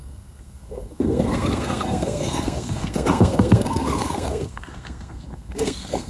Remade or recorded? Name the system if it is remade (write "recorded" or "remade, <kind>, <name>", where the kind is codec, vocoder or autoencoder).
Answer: remade, codec, SNAC